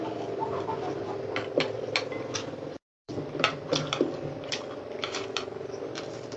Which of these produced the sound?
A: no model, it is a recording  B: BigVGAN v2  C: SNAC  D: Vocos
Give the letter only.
B